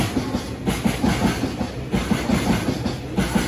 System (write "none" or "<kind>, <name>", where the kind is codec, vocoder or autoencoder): none